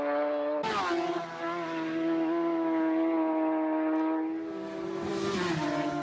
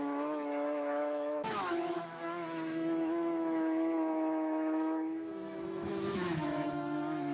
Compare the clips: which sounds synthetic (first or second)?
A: second